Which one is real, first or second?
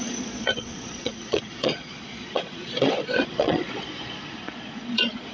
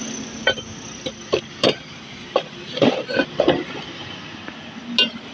second